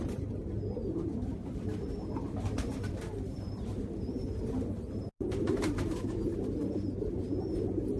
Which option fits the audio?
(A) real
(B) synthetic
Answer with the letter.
B